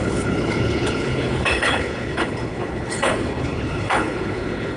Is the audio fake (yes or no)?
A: yes